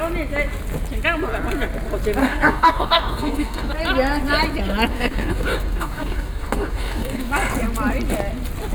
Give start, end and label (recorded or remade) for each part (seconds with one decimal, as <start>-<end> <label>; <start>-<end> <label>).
0.0-2.2 recorded; 2.2-3.7 remade; 3.7-4.9 recorded; 4.9-7.3 remade; 7.3-8.7 recorded